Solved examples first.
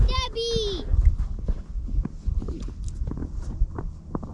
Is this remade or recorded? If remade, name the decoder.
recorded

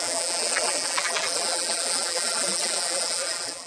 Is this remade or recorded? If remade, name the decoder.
remade, vocoder, BigVGAN v2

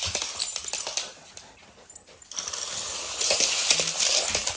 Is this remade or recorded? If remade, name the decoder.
recorded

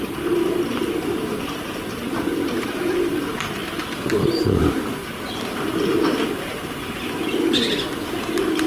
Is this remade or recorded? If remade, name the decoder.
remade, vocoder, BigVGAN v2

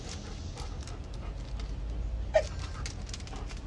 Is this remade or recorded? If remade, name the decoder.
recorded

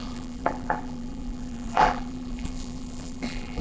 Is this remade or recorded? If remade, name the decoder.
remade, vocoder, BigVGAN v2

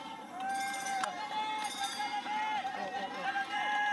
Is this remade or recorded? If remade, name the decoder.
remade, vocoder, BigVGAN v2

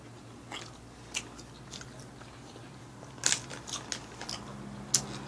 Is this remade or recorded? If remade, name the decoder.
recorded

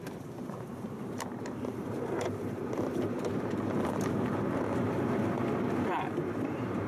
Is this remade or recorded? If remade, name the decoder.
remade, vocoder, BigVGAN v2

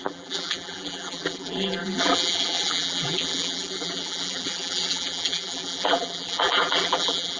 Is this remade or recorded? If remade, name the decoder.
remade, vocoder, BigVGAN v2